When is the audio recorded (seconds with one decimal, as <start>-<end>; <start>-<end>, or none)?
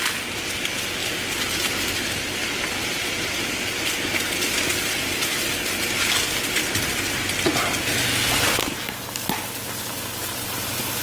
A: 0.0-11.0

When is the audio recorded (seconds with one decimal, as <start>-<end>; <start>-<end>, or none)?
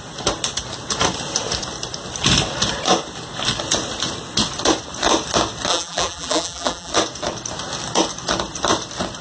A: 0.0-5.7; 6.9-9.2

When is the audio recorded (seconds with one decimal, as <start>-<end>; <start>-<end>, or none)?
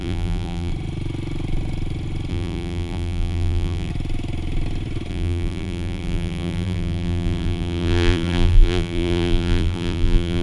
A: 0.7-2.3; 3.9-5.1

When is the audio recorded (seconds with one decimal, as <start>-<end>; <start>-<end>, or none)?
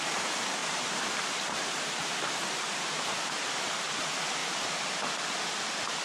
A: 0.0-0.6; 3.5-4.4; 5.3-6.0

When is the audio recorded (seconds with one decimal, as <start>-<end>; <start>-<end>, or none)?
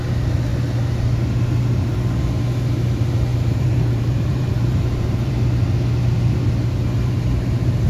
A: 0.0-3.3; 5.3-7.9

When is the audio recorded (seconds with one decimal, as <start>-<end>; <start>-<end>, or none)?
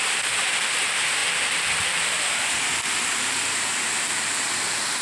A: none